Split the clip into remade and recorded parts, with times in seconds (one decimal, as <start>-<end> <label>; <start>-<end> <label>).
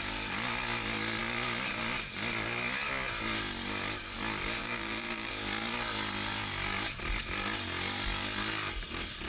0.0-4.6 recorded; 4.6-5.3 remade; 5.3-9.3 recorded